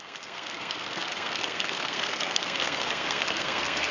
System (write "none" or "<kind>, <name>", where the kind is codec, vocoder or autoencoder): codec, SNAC